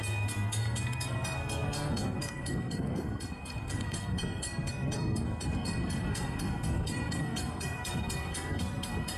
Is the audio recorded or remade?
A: remade